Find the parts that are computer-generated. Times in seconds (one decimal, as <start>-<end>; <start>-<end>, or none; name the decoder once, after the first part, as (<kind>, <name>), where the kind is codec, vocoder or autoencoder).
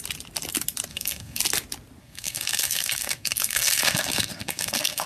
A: 0.9-1.4 (codec, SNAC); 2.0-5.1